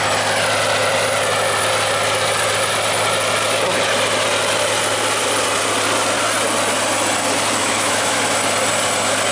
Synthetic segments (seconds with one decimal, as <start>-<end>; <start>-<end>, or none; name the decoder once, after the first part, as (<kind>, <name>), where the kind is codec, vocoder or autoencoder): 7.6-8.2 (autoencoder, DAC-VAE)